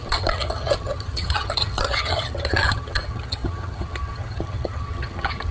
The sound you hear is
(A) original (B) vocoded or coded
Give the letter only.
B